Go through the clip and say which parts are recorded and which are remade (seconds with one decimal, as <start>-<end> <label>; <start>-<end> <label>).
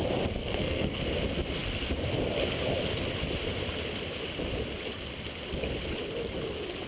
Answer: 0.0-0.4 recorded; 0.4-1.0 remade; 1.0-6.9 recorded